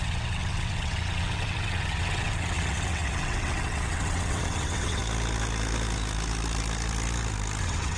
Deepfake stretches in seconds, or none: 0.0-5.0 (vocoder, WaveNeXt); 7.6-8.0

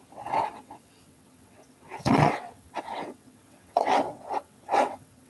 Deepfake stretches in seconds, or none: 0.0-5.3 (vocoder, WaveNeXt)

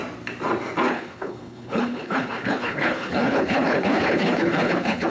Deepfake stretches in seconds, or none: 0.9-5.1 (codec, HILCodec)

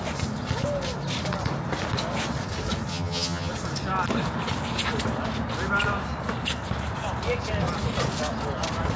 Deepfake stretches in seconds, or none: 2.9-3.5 (vocoder, HiFi-GAN)

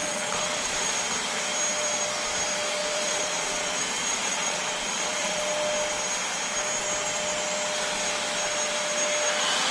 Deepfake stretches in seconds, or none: 0.0-1.0 (vocoder, Vocos); 2.8-5.4

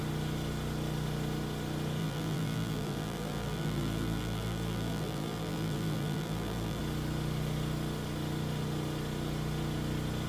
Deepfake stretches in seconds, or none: 2.0-6.8 (vocoder, BigVGAN v2)